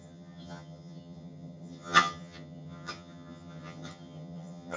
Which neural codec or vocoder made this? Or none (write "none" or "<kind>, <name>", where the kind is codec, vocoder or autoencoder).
vocoder, HiFi-GAN